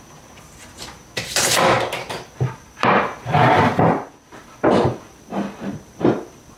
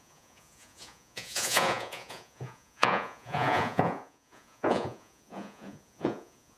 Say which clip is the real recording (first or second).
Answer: first